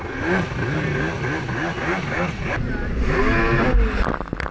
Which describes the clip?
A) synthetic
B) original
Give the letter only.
B